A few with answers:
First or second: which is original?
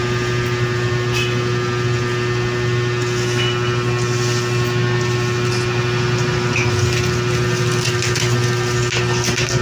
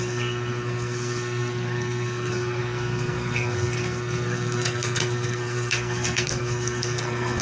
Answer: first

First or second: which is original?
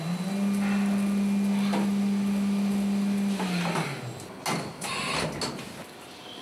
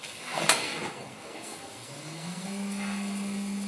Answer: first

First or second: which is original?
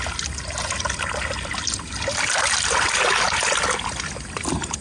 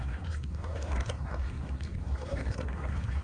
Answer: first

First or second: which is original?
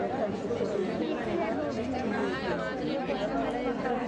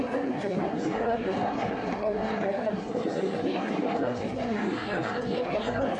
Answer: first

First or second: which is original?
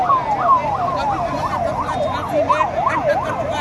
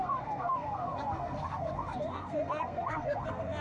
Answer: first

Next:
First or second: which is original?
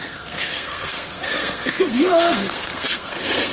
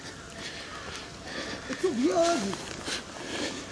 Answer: second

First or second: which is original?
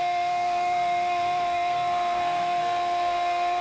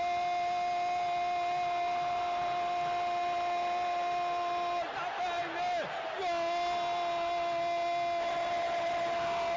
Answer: second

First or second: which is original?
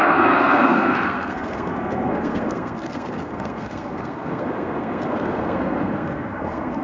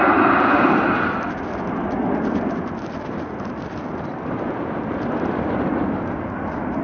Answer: second